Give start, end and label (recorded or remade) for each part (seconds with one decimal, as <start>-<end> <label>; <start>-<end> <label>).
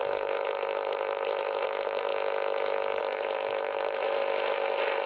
0.0-2.1 remade; 2.1-3.0 recorded; 3.0-4.2 remade; 4.2-5.1 recorded